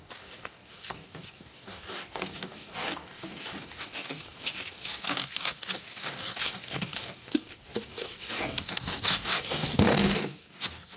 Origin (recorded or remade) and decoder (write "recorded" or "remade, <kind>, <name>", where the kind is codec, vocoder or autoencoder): remade, codec, DAC